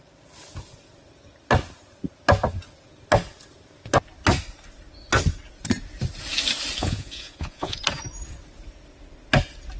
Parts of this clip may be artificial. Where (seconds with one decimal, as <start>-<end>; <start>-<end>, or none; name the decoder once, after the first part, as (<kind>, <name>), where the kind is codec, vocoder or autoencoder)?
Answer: 6.8-7.8 (vocoder, Vocos)